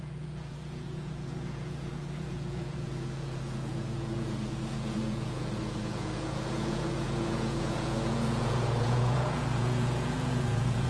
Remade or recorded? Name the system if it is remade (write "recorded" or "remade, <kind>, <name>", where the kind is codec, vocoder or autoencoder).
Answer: remade, vocoder, Vocos